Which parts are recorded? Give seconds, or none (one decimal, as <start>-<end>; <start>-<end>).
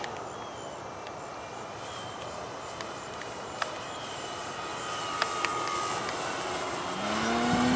0.0-1.3; 4.6-7.8